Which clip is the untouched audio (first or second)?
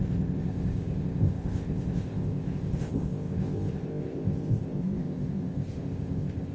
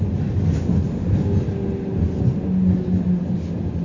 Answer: second